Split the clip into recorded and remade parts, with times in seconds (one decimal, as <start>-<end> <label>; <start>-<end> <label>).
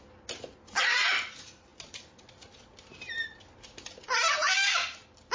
0.0-5.3 recorded